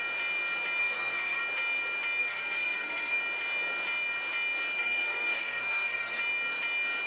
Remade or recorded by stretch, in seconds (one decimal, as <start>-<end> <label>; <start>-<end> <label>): 0.0-0.8 recorded; 0.8-1.4 remade; 1.4-2.2 recorded; 2.2-3.2 remade; 3.2-4.8 recorded; 4.8-6.2 remade; 6.2-7.1 recorded